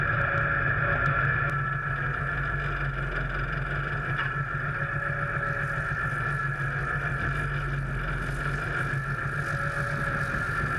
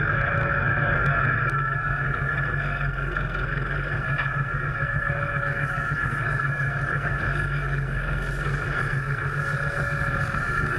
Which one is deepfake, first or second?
second